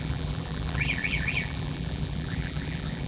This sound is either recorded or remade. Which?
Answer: remade